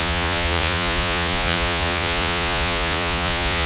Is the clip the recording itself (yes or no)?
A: no